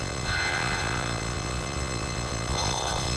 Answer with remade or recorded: remade